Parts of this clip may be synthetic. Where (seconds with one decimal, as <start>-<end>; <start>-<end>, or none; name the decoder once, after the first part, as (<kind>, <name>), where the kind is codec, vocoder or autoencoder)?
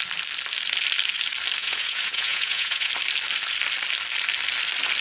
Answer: 1.6-2.9 (vocoder, Vocos)